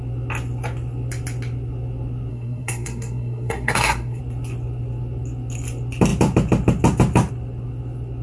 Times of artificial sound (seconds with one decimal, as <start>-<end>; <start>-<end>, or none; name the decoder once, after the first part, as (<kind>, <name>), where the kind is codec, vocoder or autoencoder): 2.3-4.2 (codec, SNAC)